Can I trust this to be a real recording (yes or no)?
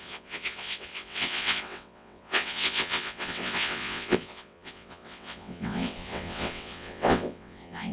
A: no